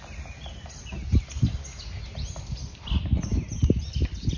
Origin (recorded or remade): recorded